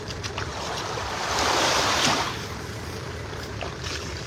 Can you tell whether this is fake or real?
fake